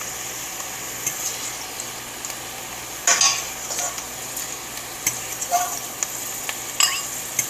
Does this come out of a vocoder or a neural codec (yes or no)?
no